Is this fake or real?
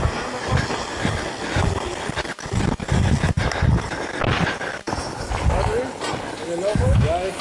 real